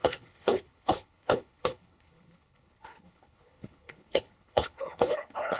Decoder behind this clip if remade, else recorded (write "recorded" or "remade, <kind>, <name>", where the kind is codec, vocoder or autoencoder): remade, codec, HILCodec